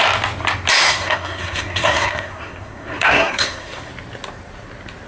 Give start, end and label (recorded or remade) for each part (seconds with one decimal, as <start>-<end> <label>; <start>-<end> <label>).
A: 0.0-0.8 recorded; 0.8-3.9 remade; 3.9-5.1 recorded